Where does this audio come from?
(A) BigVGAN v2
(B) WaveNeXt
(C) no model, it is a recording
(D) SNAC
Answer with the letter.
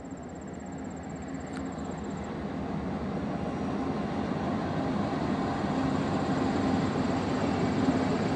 C